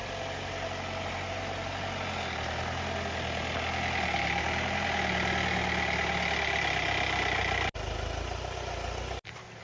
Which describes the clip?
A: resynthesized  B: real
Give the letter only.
B